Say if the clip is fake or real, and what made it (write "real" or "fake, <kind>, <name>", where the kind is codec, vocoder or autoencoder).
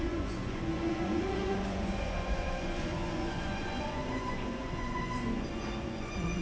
fake, vocoder, Vocos